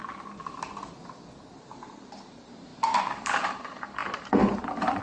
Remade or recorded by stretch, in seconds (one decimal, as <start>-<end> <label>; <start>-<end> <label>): 0.0-1.3 recorded; 1.3-5.0 remade